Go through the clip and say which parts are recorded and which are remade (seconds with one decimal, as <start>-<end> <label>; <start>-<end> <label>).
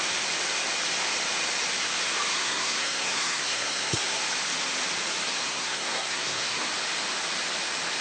0.0-2.3 recorded; 2.3-4.2 remade; 4.2-5.3 recorded; 5.3-6.7 remade; 6.7-8.0 recorded